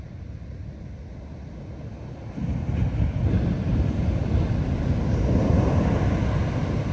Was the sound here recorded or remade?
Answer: recorded